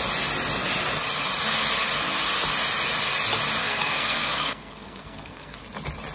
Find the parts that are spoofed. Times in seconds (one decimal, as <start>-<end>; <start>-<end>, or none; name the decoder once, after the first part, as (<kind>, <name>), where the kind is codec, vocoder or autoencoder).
3.6-5.6 (codec, SNAC)